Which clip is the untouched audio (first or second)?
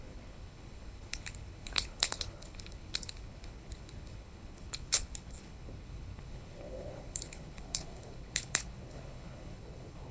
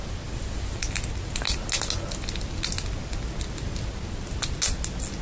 second